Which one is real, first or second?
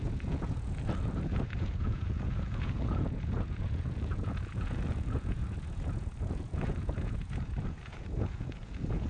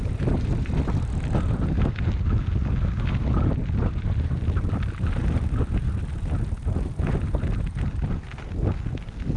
second